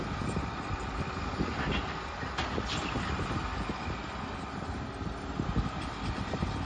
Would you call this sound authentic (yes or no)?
yes